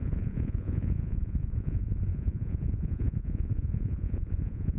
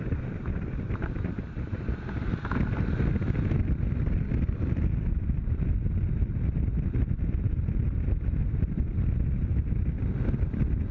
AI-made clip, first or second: first